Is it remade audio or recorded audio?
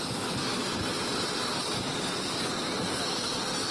recorded